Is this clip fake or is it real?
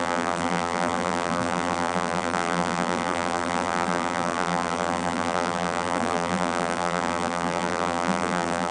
fake